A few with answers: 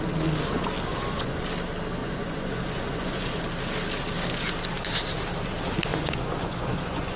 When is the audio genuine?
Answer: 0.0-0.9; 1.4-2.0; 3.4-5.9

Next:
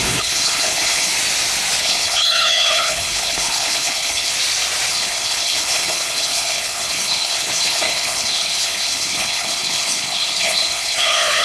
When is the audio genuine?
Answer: 1.1-1.8; 4.3-4.9